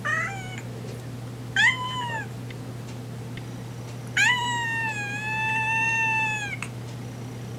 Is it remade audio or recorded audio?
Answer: recorded